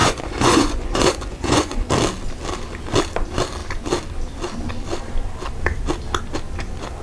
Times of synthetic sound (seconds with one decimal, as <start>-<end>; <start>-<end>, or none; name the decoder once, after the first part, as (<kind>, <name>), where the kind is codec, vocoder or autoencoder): 0.0-1.9 (vocoder, Vocos)